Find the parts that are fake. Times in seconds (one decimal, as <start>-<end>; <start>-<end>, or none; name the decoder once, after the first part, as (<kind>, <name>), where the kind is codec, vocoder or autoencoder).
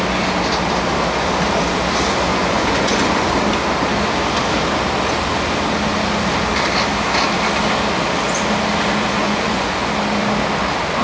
2.3-3.3 (vocoder, Vocos); 9.2-9.9